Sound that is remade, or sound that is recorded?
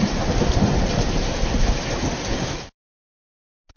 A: recorded